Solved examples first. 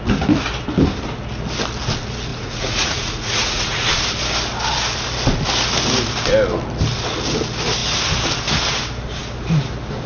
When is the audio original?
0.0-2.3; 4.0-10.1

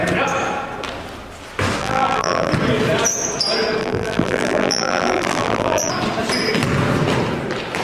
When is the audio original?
0.0-1.8; 2.5-3.8; 5.9-7.8